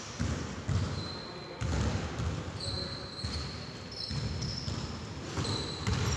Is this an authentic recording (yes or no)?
yes